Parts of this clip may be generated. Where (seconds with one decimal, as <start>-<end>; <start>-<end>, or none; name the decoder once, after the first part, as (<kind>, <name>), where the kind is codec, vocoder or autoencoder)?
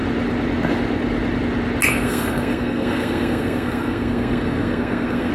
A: 1.9-5.3 (codec, SNAC)